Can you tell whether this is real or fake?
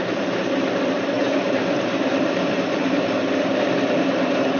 fake